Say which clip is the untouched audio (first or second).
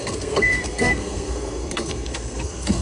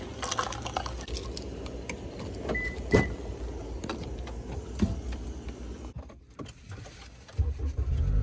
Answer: second